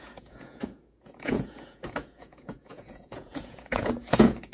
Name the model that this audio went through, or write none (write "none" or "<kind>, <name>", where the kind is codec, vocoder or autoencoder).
vocoder, Vocos